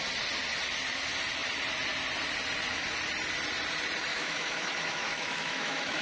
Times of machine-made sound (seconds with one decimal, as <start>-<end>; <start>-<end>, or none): 4.1-6.0

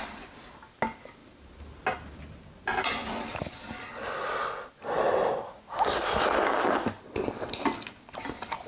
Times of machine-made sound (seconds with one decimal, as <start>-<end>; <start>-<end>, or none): none